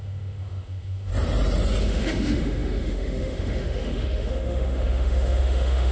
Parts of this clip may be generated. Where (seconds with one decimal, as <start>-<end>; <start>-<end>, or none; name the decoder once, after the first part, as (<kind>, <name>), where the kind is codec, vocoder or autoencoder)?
0.0-1.1 (autoencoder, DAC-VAE); 1.8-5.9